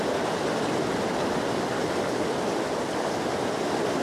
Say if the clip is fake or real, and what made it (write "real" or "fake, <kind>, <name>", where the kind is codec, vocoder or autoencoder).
real